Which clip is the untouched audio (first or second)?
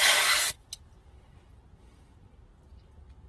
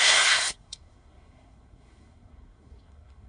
first